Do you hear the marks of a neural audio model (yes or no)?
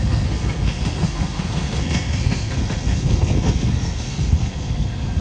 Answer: yes